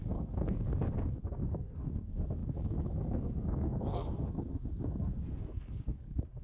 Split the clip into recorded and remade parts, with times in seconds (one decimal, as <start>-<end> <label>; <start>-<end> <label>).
0.0-6.4 remade